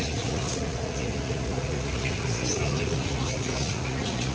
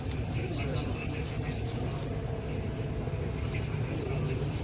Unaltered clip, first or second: second